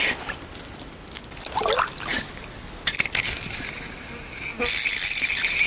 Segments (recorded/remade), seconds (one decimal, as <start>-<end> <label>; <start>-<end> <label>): 0.0-5.7 recorded